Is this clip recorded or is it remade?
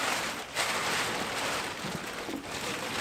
remade